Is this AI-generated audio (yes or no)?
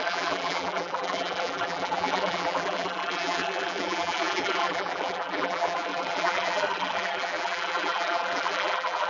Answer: yes